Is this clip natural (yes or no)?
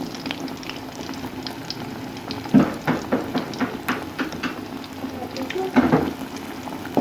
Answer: yes